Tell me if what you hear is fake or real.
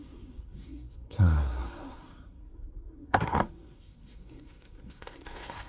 fake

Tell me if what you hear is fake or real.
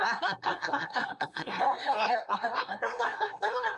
fake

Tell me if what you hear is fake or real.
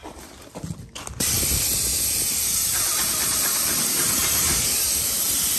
real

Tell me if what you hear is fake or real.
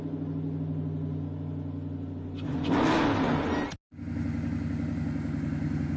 real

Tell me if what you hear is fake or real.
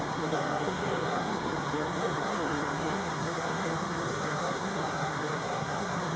fake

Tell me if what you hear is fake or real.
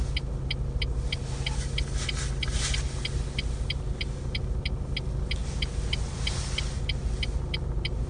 real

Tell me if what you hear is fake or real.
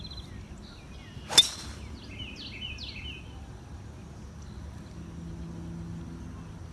real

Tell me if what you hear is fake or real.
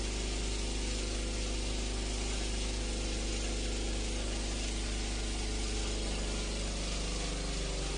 real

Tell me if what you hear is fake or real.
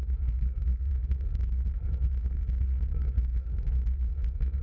fake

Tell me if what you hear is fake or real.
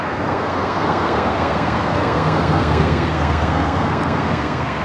fake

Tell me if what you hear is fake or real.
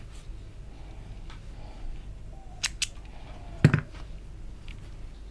real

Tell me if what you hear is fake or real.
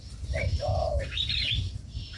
real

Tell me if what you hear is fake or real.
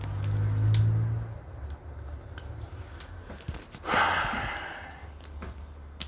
real